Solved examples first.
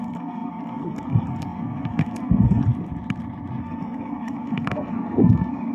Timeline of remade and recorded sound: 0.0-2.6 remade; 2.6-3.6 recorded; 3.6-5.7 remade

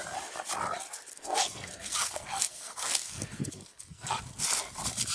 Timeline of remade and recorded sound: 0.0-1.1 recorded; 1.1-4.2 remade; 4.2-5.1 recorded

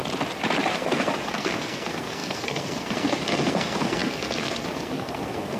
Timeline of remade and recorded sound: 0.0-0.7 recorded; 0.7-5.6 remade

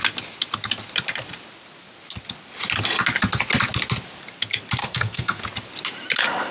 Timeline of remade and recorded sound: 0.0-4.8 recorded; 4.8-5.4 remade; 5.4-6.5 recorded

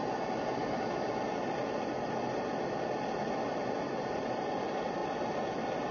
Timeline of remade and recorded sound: 0.0-5.9 recorded

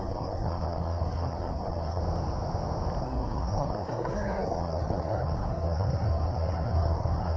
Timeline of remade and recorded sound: 0.0-2.0 remade; 2.0-3.0 recorded; 3.0-7.4 remade

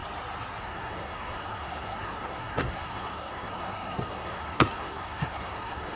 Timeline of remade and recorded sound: 0.0-0.6 recorded; 0.6-6.0 remade

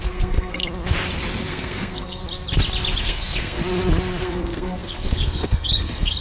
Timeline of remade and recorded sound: 0.0-0.6 remade; 0.6-1.5 recorded; 1.5-2.2 remade; 2.2-3.0 recorded; 3.0-3.6 remade; 3.6-4.2 recorded; 4.2-6.2 remade